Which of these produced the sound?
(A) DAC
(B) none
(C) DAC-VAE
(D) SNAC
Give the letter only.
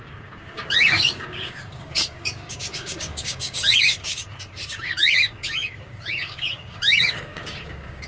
A